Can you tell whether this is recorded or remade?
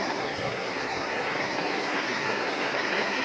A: remade